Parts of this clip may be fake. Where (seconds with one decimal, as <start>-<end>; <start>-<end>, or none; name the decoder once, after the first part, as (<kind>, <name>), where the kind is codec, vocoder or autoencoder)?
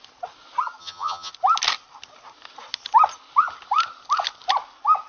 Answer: 0.8-1.3 (vocoder, HiFi-GAN)